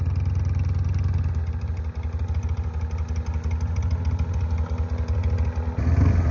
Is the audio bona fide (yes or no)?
yes